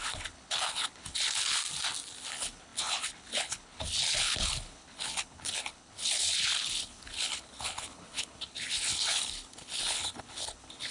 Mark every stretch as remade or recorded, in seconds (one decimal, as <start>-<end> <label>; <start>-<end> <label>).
0.0-1.6 remade; 1.6-2.3 recorded; 2.3-10.9 remade